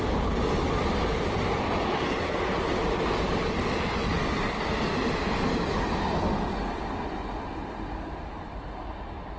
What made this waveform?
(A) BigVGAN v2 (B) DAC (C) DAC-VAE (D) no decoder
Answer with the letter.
D